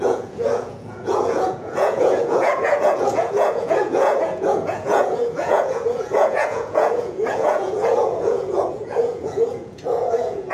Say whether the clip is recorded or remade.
remade